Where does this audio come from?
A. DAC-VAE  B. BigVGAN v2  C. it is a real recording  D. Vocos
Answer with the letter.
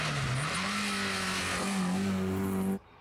C